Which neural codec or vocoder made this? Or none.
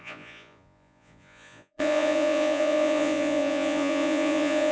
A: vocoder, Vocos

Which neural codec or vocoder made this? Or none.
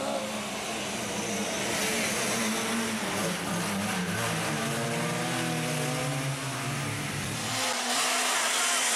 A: none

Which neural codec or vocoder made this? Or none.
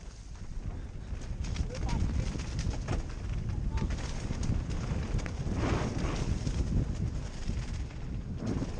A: none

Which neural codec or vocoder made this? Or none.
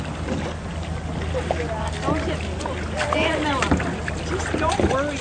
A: none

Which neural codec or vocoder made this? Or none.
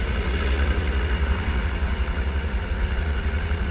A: vocoder, Vocos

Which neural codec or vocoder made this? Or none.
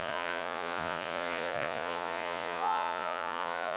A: vocoder, Vocos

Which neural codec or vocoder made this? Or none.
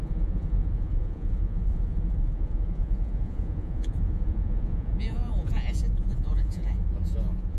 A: vocoder, Vocos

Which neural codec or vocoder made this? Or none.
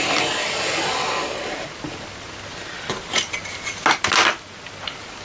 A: none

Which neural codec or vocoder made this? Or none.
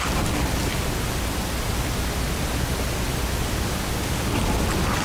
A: none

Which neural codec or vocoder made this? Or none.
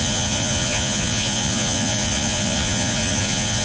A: vocoder, Vocos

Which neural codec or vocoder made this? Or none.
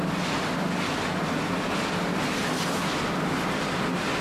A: none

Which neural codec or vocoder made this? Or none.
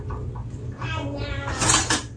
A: none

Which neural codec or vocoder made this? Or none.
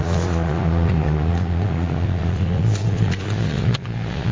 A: vocoder, Vocos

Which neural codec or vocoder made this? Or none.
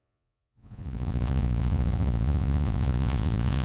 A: vocoder, Vocos